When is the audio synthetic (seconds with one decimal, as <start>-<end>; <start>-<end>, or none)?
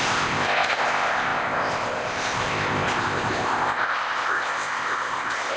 0.0-5.6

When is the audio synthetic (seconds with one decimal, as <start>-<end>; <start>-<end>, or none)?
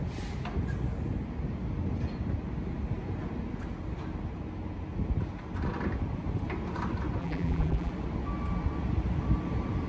7.2-7.9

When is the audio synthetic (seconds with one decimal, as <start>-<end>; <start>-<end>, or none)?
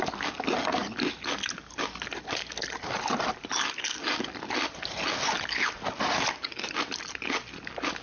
none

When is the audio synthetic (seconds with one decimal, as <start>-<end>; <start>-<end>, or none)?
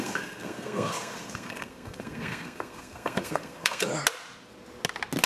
0.0-3.9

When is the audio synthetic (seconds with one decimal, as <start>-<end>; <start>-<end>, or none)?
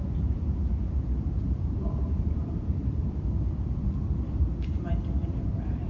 0.0-3.8; 4.3-5.9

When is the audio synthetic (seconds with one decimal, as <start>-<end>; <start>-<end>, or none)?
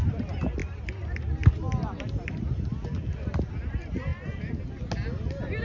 4.1-4.6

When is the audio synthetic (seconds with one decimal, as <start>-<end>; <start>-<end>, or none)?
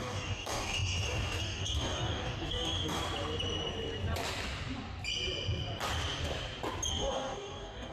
0.0-3.0; 6.9-7.9